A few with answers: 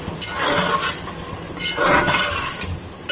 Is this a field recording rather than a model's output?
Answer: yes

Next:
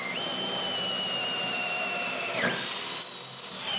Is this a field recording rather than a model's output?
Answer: yes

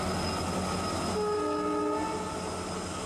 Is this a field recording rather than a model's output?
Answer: yes